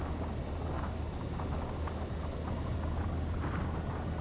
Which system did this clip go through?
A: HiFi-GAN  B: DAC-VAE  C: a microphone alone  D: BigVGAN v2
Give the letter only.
C